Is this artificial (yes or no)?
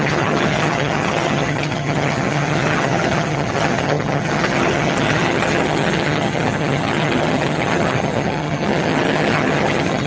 yes